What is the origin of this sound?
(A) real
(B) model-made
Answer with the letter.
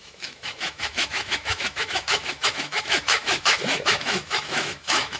B